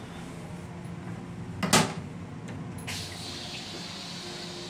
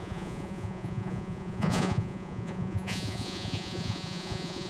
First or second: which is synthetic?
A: second